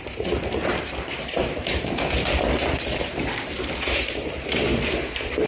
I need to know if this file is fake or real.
real